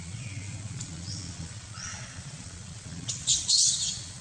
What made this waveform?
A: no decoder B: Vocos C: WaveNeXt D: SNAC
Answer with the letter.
B